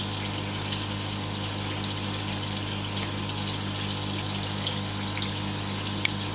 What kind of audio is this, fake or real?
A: real